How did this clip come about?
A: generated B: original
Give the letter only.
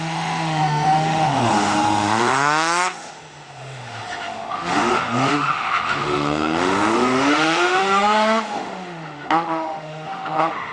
A